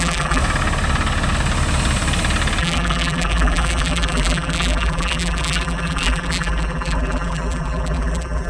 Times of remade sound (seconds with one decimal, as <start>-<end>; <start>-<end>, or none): 0.0-0.4; 2.6-8.5